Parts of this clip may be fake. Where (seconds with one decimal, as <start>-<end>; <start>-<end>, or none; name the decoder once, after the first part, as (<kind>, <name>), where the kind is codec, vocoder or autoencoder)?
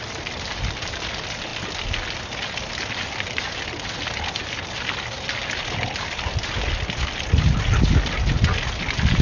none